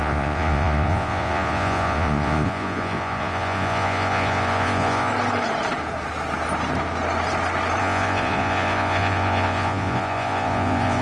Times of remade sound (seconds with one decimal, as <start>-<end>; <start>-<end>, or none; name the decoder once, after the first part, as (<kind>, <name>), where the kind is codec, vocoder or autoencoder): 0.0-5.1 (vocoder, Vocos); 7.8-11.0